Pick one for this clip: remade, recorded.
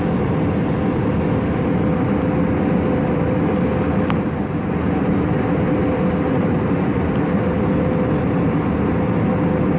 recorded